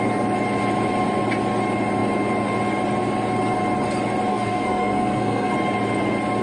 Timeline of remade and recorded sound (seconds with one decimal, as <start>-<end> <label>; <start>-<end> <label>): 0.0-4.3 recorded; 4.3-5.5 remade; 5.5-6.4 recorded